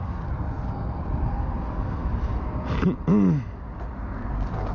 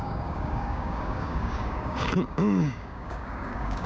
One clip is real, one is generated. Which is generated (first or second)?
second